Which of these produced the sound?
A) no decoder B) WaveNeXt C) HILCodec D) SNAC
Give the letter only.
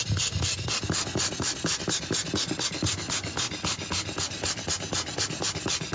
A